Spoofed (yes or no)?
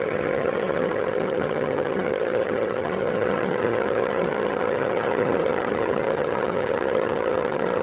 yes